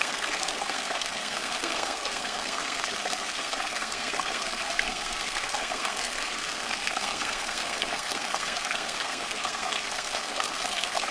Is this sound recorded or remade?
remade